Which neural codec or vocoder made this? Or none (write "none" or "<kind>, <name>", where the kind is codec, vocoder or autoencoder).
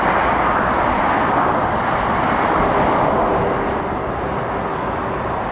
none